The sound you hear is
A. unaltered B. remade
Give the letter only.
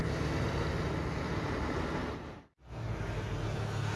A